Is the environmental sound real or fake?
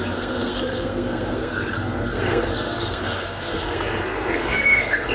fake